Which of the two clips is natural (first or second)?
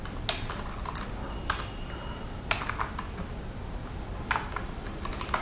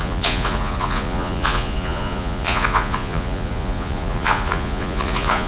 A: first